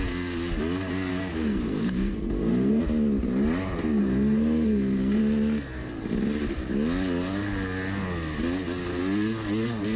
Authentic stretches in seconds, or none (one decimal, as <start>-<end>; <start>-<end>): 0.0-1.1; 2.8-4.0; 5.2-10.0